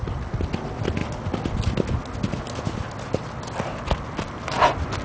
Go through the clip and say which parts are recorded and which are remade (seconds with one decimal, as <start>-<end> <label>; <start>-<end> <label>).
0.0-5.0 recorded